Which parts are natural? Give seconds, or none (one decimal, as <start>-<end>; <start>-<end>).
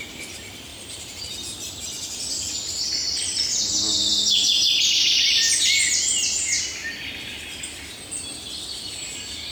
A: 0.0-0.7; 1.3-9.5